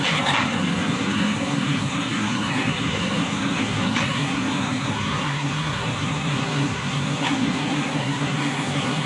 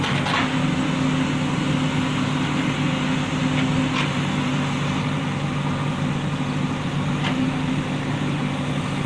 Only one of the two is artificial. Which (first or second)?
first